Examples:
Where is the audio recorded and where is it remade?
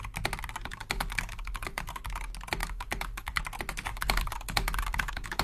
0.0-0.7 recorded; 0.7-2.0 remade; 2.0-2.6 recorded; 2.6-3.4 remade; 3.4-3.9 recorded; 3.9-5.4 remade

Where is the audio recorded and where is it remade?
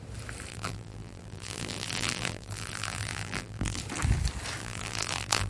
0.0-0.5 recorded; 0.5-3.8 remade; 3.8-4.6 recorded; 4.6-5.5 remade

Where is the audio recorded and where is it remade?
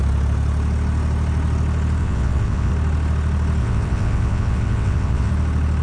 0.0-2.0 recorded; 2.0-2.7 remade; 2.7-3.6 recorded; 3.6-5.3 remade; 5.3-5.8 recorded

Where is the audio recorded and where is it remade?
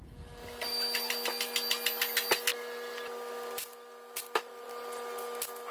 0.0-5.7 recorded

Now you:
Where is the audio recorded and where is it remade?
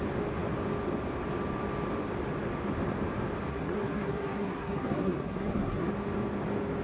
0.0-3.5 recorded; 3.5-5.9 remade; 5.9-6.8 recorded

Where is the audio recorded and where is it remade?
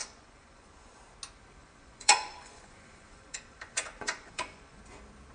0.0-1.0 remade; 1.0-1.6 recorded; 1.6-4.8 remade; 4.8-5.3 recorded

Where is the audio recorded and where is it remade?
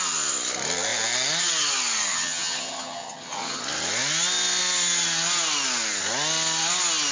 0.0-2.1 recorded; 2.1-3.6 remade; 3.6-7.1 recorded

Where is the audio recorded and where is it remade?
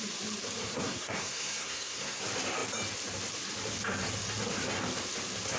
0.0-0.6 recorded; 0.6-2.2 remade; 2.2-5.6 recorded